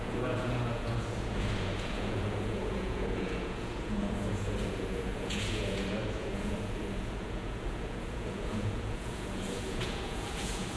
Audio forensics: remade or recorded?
remade